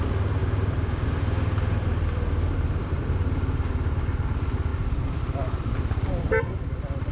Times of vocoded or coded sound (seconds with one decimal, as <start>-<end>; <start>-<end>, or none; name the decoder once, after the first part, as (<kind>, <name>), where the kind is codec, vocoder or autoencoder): 0.4-3.7 (vocoder, BigVGAN v2); 4.7-7.1